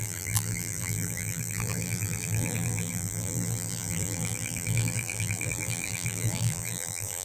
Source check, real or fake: fake